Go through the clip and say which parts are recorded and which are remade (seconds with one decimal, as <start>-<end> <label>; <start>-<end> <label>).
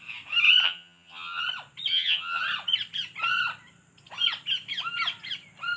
0.0-0.6 recorded; 0.6-1.4 remade; 1.4-1.9 recorded; 1.9-2.4 remade; 2.4-5.8 recorded